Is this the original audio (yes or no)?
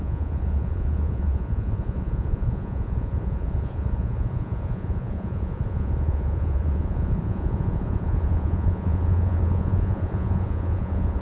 no